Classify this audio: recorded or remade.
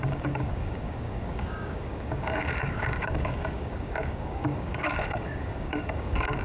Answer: remade